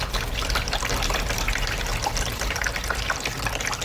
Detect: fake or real real